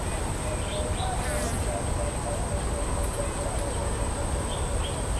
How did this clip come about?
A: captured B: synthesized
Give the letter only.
A